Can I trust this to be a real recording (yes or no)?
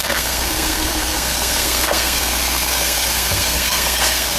no